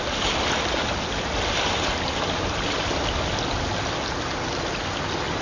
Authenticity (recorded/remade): recorded